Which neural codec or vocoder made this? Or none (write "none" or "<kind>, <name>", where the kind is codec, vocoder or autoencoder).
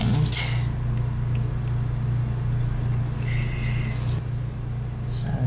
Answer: none